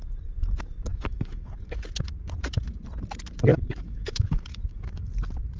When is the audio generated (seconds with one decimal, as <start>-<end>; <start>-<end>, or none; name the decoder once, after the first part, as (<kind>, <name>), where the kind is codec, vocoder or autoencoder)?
0.9-1.8 (autoencoder, DAC-VAE); 3.5-5.1